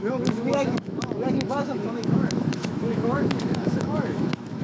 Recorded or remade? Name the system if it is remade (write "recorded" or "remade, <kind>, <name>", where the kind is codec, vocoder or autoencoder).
remade, autoencoder, DAC-VAE